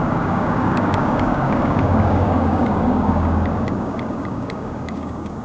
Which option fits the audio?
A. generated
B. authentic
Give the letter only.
A